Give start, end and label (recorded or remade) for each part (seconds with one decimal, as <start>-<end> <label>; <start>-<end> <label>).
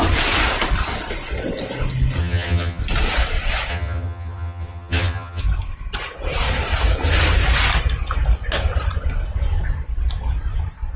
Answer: 0.0-2.2 recorded; 2.2-2.8 remade; 2.8-3.7 recorded; 3.7-5.4 remade; 5.4-11.0 recorded